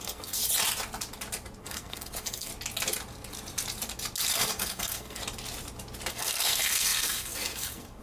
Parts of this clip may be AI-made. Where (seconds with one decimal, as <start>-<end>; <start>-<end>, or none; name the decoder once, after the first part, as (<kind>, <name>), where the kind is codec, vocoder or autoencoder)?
0.0-0.4 (codec, SNAC); 1.6-2.5; 4.3-5.2; 6.1-8.0